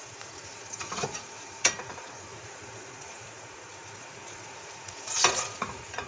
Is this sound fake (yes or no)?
yes